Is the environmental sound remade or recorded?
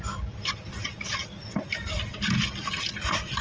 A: recorded